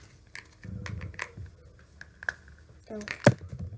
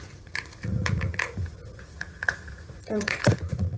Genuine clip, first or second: first